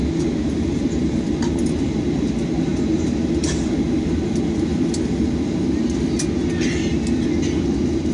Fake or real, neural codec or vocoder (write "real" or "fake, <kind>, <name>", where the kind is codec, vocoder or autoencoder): real